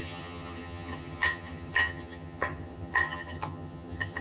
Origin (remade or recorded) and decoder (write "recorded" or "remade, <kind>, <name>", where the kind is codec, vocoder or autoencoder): remade, vocoder, HiFi-GAN